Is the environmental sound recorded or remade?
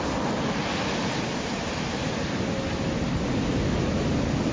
recorded